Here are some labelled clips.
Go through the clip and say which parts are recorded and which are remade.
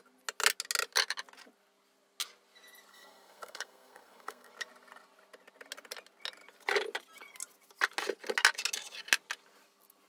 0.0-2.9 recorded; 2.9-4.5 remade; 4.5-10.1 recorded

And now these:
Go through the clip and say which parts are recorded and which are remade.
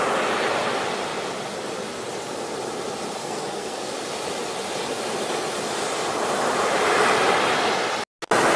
0.0-3.2 recorded; 3.2-3.9 remade; 3.9-8.6 recorded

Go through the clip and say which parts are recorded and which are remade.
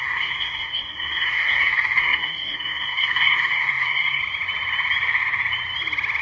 0.0-4.2 remade; 4.2-6.2 recorded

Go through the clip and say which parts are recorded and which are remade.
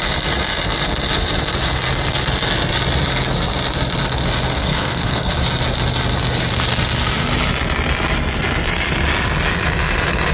0.0-4.7 recorded; 4.7-5.3 remade; 5.3-10.3 recorded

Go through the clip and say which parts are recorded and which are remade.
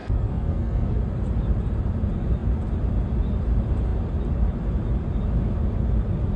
0.0-1.0 remade; 1.0-6.4 recorded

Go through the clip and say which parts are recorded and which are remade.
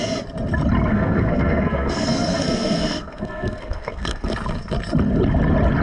0.0-0.9 recorded; 0.9-4.3 remade; 4.3-5.8 recorded